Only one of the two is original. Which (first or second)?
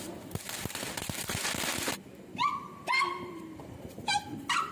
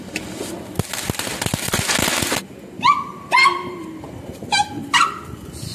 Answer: second